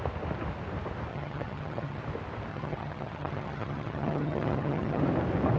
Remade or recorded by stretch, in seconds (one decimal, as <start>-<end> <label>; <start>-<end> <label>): 0.0-1.1 recorded; 1.1-2.0 remade; 2.0-2.5 recorded; 2.5-5.0 remade; 5.0-5.6 recorded